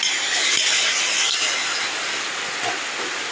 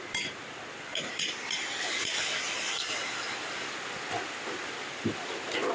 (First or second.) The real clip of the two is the first